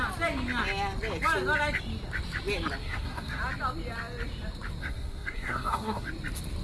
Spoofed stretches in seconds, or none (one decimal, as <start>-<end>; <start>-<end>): 2.8-3.4; 4.8-6.1